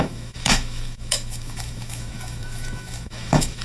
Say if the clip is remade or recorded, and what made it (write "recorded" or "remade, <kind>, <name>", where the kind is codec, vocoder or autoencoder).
remade, autoencoder, DAC-VAE